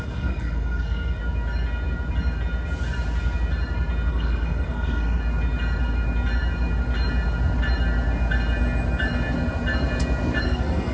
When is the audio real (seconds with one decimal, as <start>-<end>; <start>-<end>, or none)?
1.2-4.1; 5.2-10.4